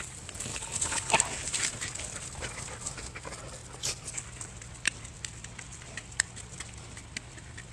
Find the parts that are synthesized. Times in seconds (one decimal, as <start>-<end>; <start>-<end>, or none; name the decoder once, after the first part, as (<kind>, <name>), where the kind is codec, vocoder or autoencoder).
0.5-1.1 (codec, HILCodec)